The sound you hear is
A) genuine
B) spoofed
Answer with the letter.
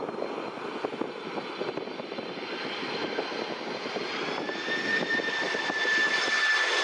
A